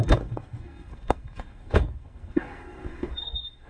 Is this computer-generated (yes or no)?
yes